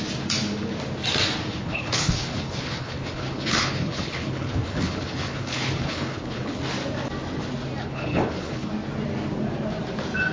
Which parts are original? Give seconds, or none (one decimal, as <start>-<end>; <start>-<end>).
0.0-1.5; 6.6-7.8; 8.7-10.3